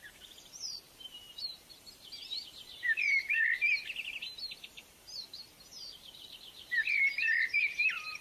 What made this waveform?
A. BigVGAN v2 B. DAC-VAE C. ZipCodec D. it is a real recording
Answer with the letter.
A